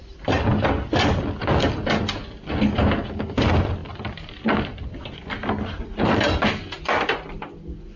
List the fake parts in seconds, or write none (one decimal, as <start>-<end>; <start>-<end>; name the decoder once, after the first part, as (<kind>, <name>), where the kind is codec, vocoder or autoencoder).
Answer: none